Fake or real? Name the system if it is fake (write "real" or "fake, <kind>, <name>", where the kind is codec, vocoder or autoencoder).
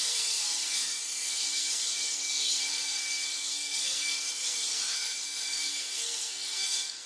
fake, codec, SNAC